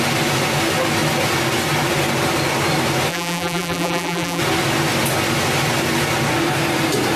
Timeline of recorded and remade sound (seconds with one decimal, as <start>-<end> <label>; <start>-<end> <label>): 0.0-3.1 recorded; 3.1-4.4 remade; 4.4-7.2 recorded